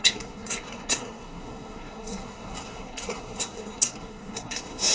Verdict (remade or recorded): remade